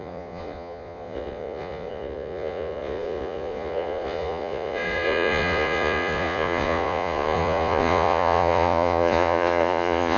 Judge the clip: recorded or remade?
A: remade